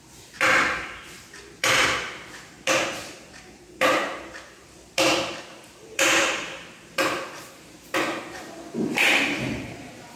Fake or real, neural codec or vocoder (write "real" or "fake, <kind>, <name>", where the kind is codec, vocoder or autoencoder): fake, vocoder, BigVGAN v2